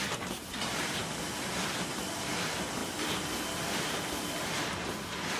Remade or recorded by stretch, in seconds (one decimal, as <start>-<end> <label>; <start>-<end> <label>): 0.0-1.0 recorded; 1.0-2.3 remade; 2.3-2.8 recorded; 2.8-4.7 remade; 4.7-5.4 recorded